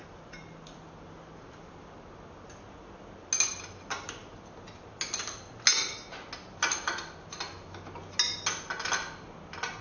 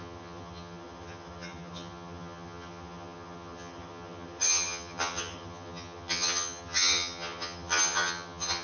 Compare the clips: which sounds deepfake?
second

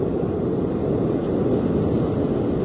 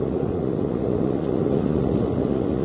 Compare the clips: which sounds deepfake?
second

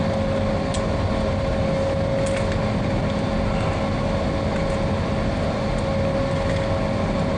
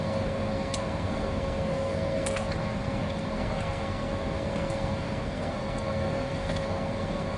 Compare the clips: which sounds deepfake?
second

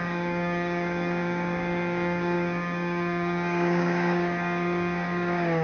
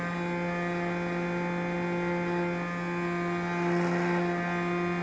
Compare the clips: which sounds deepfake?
first